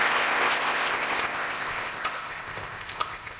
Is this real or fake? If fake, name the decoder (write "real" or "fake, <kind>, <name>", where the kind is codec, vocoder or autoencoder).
fake, codec, ZipCodec